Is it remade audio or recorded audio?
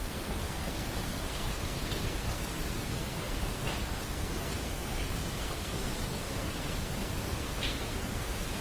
remade